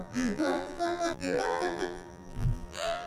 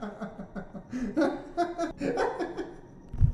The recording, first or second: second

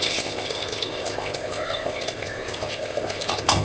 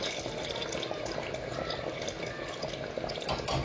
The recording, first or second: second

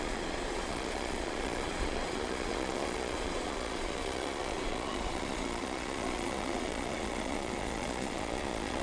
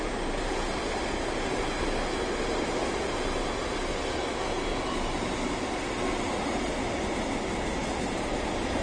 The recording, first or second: second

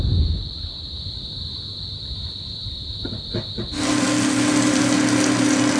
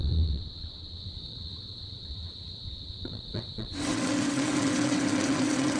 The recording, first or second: first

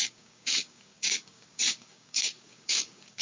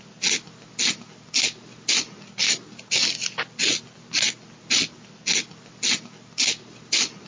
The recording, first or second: second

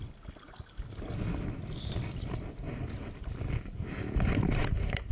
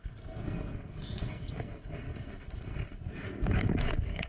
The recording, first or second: first